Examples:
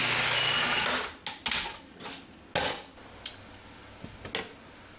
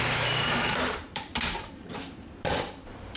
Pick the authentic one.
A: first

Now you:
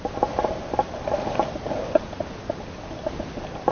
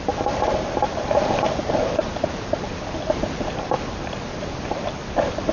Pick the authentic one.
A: first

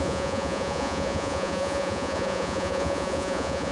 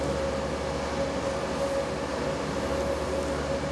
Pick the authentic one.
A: second